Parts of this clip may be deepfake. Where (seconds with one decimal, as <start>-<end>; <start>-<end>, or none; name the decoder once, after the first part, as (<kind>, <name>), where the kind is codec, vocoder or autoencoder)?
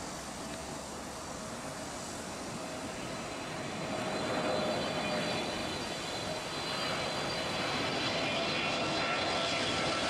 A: none